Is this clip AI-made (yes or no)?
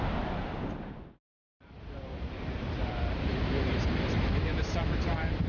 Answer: yes